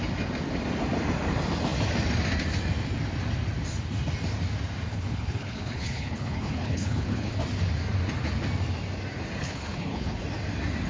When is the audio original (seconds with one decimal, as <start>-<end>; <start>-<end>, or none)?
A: 0.0-4.9; 7.3-9.4; 10.2-10.9